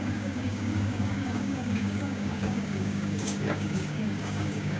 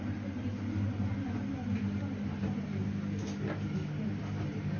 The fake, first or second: first